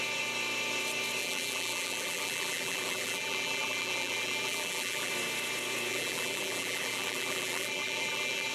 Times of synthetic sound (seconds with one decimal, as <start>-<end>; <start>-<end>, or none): 1.2-5.1; 5.9-8.5